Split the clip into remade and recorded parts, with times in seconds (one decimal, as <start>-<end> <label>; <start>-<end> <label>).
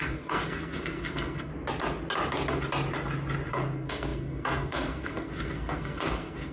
0.0-1.5 remade; 1.5-3.5 recorded; 3.5-6.5 remade